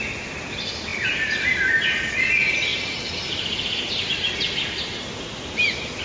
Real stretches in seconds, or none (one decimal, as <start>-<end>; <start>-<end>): 0.0-6.0